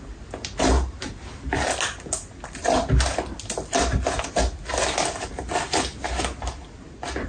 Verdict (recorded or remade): recorded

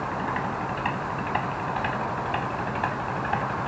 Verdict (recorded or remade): recorded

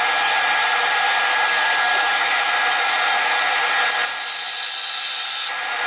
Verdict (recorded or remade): recorded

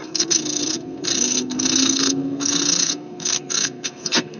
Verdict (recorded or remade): remade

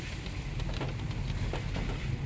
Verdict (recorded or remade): recorded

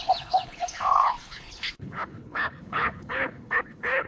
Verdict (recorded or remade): remade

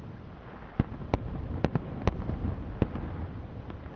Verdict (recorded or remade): recorded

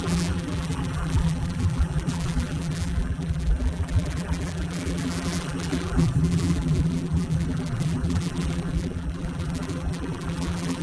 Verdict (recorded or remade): remade